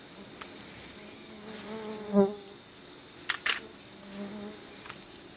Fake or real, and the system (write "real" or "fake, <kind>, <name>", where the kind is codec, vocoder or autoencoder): real